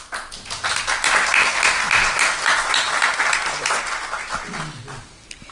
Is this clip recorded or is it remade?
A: recorded